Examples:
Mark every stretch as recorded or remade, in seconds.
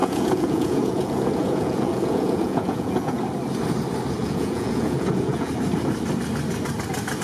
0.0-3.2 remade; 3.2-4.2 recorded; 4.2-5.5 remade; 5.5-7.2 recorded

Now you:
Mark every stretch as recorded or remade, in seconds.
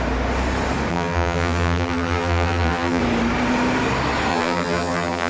0.0-0.9 recorded; 0.9-3.0 remade; 3.0-4.3 recorded; 4.3-5.3 remade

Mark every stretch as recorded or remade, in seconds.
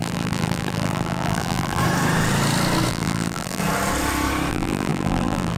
0.0-1.8 remade; 1.8-2.9 recorded; 2.9-3.6 remade; 3.6-4.5 recorded; 4.5-5.6 remade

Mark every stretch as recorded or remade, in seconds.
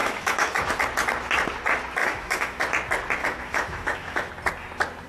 0.0-0.7 remade; 0.7-2.0 recorded; 2.0-2.6 remade; 2.6-3.2 recorded; 3.2-4.3 remade; 4.3-5.1 recorded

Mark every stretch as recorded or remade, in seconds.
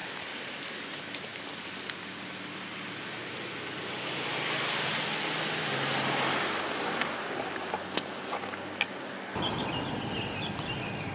0.0-0.6 remade; 0.6-1.3 recorded; 1.3-3.2 remade; 3.2-11.1 recorded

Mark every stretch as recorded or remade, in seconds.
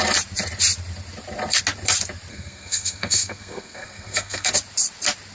0.0-2.3 recorded; 2.3-4.5 remade; 4.5-5.3 recorded